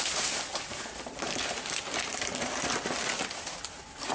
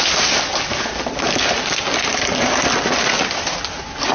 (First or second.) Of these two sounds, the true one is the second